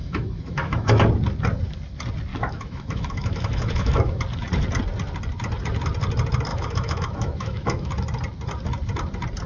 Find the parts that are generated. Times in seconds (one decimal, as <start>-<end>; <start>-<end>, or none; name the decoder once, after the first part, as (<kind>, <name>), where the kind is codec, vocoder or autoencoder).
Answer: 0.0-1.0 (autoencoder, DAC-VAE); 2.3-4.2; 6.5-7.9